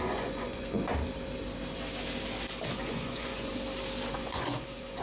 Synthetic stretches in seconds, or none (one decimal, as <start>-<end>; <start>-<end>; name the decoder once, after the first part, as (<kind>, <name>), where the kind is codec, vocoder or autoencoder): 0.0-0.9 (vocoder, Vocos); 2.7-3.5; 4.1-5.0